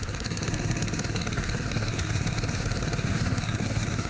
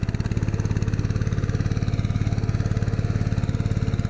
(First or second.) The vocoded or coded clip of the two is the first